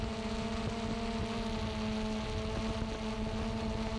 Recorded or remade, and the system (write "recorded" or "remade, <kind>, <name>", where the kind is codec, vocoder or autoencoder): recorded